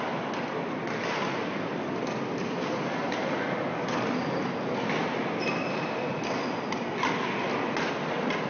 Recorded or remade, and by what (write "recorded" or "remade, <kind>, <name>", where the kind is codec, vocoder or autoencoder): recorded